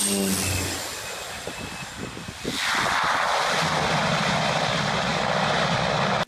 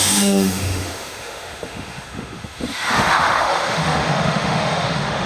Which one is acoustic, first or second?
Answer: first